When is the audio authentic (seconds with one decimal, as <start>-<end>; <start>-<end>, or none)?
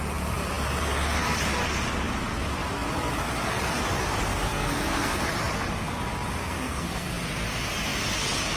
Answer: 0.0-4.5; 5.2-6.4; 7.1-8.6